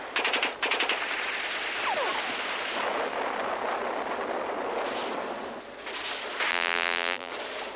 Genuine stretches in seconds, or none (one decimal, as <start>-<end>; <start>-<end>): 0.0-6.5; 7.3-7.8